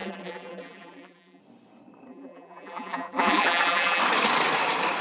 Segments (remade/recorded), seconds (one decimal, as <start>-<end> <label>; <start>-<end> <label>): 0.0-1.4 remade; 1.4-2.1 recorded; 2.1-4.0 remade; 4.0-5.0 recorded